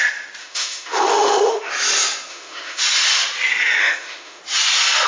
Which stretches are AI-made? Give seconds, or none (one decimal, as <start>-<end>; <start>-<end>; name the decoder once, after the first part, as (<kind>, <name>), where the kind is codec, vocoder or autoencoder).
0.4-1.7 (autoencoder, DAC-VAE); 2.3-2.8; 3.8-4.4